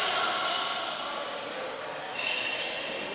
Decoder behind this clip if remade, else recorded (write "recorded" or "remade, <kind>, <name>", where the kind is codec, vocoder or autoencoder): remade, vocoder, BigVGAN v2